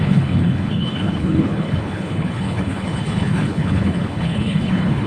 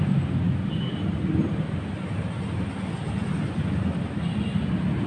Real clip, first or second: second